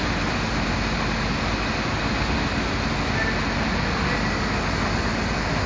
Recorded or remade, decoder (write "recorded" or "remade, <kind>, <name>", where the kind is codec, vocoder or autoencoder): recorded